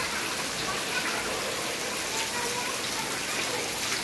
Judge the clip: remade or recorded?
recorded